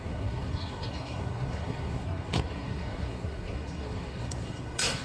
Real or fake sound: fake